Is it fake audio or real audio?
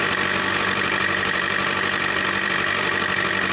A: fake